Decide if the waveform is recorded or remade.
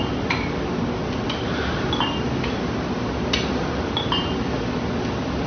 recorded